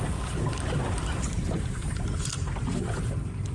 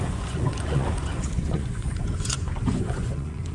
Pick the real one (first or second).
first